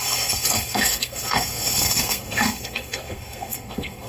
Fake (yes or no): yes